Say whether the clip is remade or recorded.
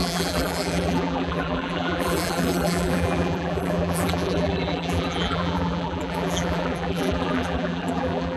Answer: remade